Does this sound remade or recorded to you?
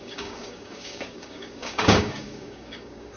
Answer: remade